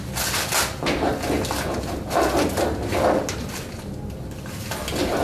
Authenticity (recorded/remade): recorded